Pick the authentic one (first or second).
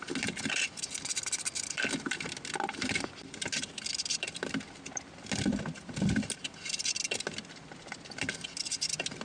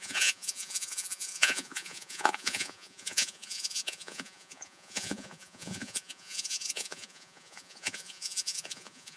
first